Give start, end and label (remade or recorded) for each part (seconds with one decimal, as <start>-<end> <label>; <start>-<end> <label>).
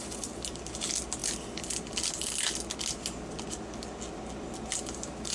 0.0-5.3 recorded